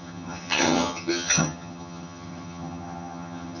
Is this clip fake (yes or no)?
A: yes